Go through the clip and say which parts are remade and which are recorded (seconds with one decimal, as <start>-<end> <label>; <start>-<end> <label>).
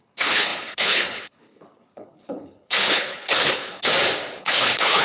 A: 0.0-3.9 remade; 3.9-4.4 recorded; 4.4-5.0 remade